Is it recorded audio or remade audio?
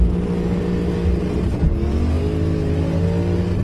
recorded